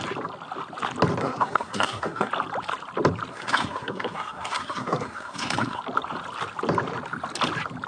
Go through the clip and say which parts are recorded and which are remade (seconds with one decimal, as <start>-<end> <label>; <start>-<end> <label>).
0.0-1.2 recorded; 1.2-2.3 remade; 2.3-3.3 recorded; 3.3-5.8 remade; 5.8-7.9 recorded